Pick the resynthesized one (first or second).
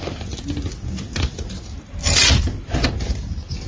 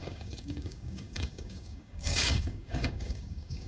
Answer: second